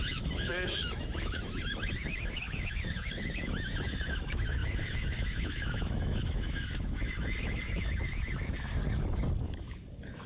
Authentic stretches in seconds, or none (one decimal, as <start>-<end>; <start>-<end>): 8.8-9.4